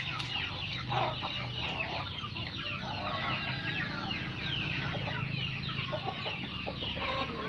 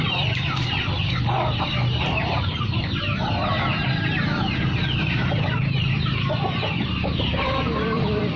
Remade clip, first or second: second